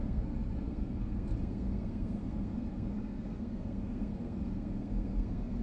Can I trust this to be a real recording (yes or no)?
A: no